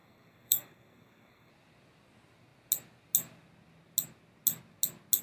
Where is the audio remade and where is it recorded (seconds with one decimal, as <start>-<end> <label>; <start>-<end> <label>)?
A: 0.0-1.5 remade; 1.5-5.2 recorded